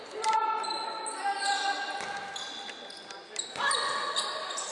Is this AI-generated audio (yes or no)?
no